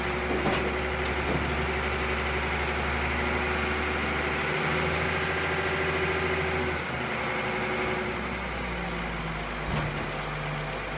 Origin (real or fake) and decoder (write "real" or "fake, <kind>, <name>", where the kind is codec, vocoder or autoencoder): real